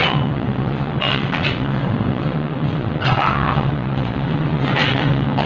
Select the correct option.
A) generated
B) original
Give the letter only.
A